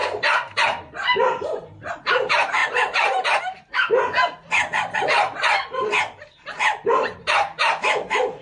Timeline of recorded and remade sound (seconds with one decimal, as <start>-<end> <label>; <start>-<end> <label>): 0.0-4.0 remade; 4.0-5.8 recorded; 5.8-8.4 remade